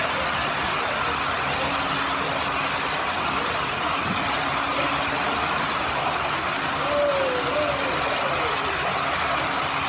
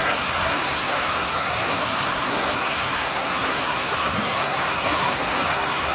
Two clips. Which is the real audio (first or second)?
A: first